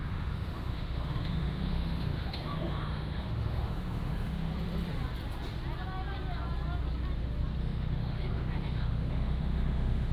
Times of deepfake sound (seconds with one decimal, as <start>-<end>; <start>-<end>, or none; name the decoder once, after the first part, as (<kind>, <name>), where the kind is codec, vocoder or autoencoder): 0.0-4.5 (autoencoder, DAC-VAE); 7.6-10.1